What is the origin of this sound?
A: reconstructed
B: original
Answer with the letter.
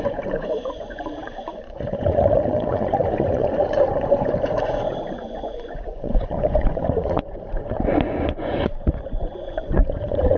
A